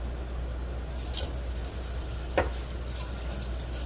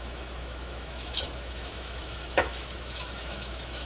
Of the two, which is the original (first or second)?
first